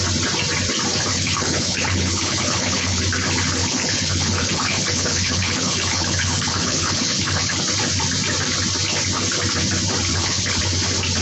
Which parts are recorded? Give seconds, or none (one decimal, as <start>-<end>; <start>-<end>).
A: 0.0-1.1; 3.0-3.6; 7.6-10.1; 10.6-11.2